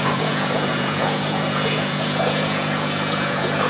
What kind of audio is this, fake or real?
fake